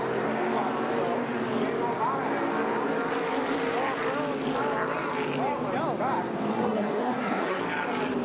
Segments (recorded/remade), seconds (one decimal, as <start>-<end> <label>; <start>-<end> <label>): 0.0-6.5 recorded; 6.5-7.6 remade; 7.6-8.2 recorded